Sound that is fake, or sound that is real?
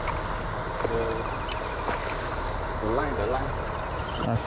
real